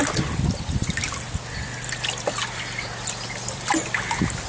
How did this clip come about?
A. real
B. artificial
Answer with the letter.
A